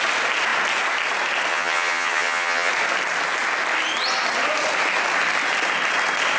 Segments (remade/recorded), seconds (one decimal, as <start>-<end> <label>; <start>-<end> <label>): 0.0-1.5 recorded; 1.5-2.7 remade; 2.7-6.4 recorded